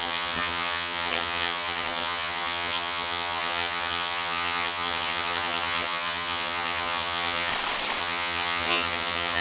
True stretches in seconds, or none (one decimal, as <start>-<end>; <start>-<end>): 7.5-8.0